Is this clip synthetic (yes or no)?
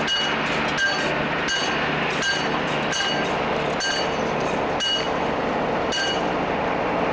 no